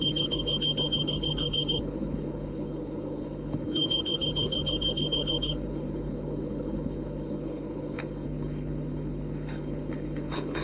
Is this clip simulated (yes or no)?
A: yes